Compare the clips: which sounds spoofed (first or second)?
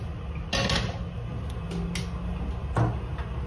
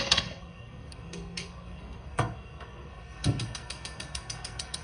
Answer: second